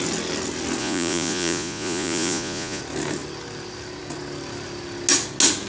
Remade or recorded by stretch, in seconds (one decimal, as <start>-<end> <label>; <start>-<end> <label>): 0.0-0.8 recorded; 0.8-2.8 remade; 2.8-5.7 recorded